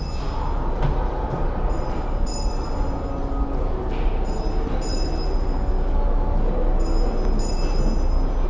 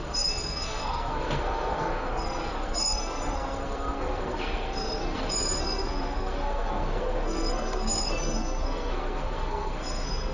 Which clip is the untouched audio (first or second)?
first